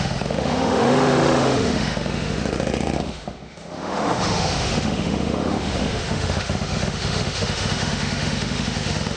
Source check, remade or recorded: remade